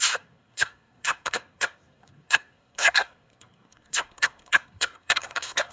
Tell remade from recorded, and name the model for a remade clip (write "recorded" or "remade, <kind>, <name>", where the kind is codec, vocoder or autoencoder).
remade, codec, SNAC